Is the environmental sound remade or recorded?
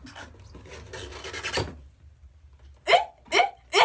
recorded